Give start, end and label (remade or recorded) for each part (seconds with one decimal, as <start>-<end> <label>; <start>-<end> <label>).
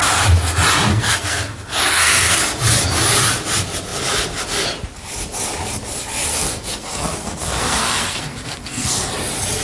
0.0-0.9 recorded; 0.9-2.4 remade; 2.4-6.3 recorded; 6.3-9.1 remade; 9.1-9.6 recorded